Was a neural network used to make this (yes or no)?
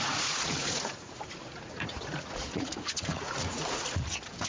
yes